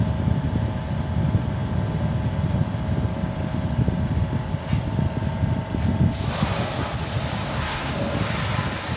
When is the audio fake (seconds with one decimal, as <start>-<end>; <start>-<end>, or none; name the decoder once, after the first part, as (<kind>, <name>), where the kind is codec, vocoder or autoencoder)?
7.4-7.9 (codec, SNAC)